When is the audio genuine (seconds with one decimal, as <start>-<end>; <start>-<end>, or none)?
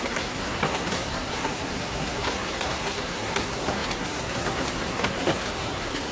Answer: none